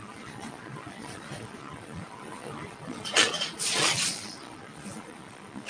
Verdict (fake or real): fake